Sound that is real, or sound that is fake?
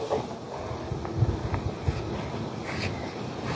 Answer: real